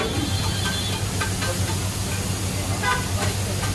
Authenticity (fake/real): real